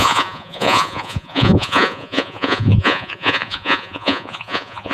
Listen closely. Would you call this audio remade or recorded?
remade